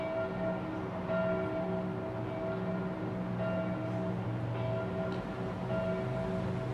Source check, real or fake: real